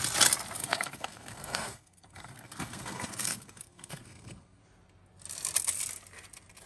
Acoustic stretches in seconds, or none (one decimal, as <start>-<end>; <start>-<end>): 0.0-0.6; 4.6-6.7